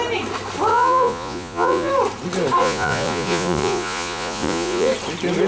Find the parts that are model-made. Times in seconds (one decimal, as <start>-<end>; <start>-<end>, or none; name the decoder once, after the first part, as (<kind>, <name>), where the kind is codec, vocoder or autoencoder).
0.7-1.9 (vocoder, Vocos); 2.6-4.9